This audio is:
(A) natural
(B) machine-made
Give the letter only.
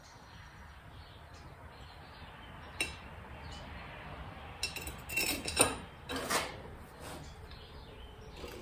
A